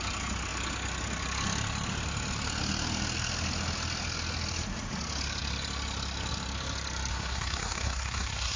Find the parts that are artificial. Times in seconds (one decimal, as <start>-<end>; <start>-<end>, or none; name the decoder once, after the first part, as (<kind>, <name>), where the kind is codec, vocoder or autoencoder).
7.1-8.6 (codec, SNAC)